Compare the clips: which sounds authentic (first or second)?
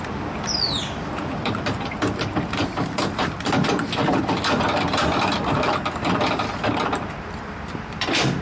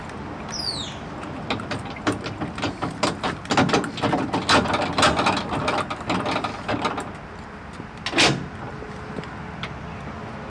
second